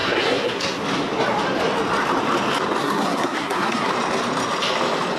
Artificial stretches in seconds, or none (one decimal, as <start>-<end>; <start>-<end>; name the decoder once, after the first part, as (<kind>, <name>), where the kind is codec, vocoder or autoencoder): 0.0-0.8 (codec, SNAC); 2.8-3.9